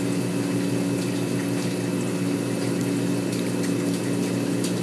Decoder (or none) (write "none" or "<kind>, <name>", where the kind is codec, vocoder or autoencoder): none